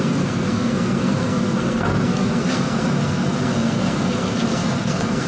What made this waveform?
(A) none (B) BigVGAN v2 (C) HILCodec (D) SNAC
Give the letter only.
D